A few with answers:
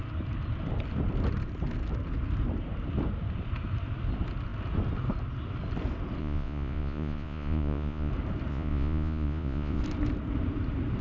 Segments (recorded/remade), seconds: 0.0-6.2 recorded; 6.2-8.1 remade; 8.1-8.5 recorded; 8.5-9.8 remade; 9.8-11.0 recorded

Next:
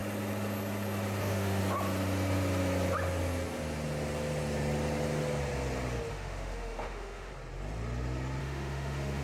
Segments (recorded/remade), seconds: 0.0-1.2 recorded; 1.2-1.6 remade; 1.6-6.1 recorded; 6.1-7.3 remade; 7.3-8.4 recorded; 8.4-9.2 remade

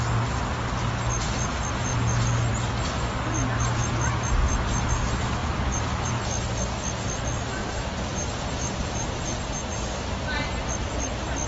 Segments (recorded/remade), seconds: 0.0-5.4 recorded; 5.4-6.1 remade; 6.1-7.6 recorded; 7.6-10.4 remade; 10.4-11.5 recorded

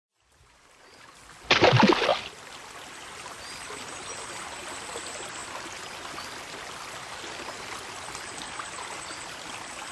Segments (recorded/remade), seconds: 0.0-9.9 recorded

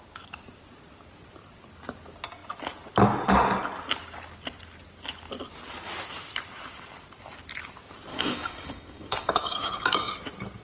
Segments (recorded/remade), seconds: 0.0-8.1 recorded; 8.1-10.1 remade; 10.1-10.6 recorded

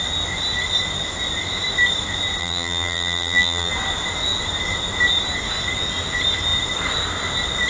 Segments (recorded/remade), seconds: 0.0-2.4 recorded; 2.4-3.7 remade; 3.7-7.7 recorded